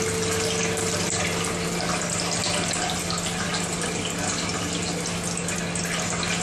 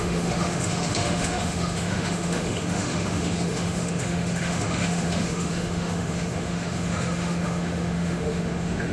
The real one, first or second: first